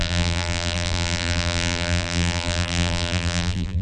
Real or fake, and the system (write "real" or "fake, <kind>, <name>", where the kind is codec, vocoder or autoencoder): fake, vocoder, BigVGAN v2